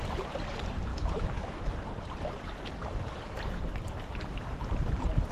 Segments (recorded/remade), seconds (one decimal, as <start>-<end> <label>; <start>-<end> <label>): 0.0-0.9 recorded; 0.9-1.6 remade; 1.6-5.3 recorded